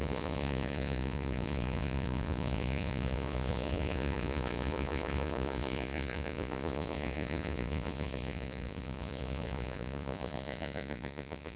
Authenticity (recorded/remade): remade